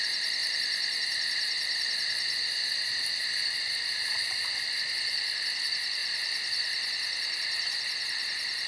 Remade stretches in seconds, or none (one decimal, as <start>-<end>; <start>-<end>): none